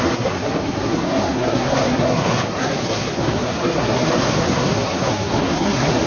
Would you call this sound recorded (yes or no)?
no